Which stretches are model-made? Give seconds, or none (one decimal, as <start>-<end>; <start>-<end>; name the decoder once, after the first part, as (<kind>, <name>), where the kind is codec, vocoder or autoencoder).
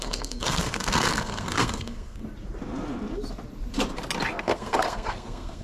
0.0-2.2 (codec, SNAC); 4.4-5.6